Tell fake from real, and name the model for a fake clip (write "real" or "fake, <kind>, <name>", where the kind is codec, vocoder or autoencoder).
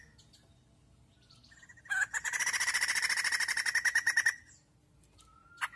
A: real